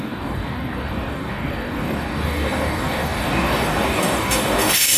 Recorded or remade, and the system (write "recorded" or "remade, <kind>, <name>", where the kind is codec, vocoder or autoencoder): remade, codec, DAC